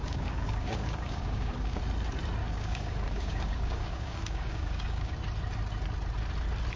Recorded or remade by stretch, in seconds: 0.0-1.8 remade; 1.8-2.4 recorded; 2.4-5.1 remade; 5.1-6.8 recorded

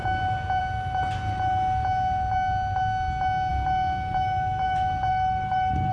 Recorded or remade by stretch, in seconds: 0.0-5.1 recorded; 5.1-5.9 remade

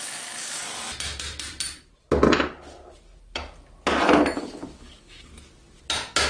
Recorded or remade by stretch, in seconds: 0.0-0.6 remade; 0.6-4.4 recorded; 4.4-5.3 remade; 5.3-6.3 recorded